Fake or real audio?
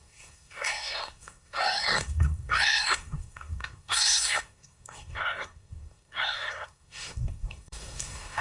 fake